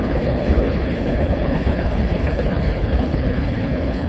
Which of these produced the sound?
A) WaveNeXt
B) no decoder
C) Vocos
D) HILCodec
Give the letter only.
D